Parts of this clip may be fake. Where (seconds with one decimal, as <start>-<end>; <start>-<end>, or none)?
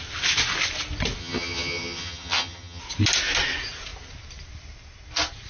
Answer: 1.2-2.8